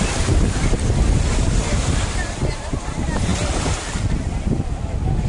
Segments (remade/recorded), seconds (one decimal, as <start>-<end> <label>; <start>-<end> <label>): 0.0-5.3 recorded